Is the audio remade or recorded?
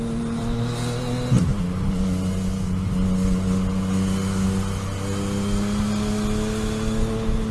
recorded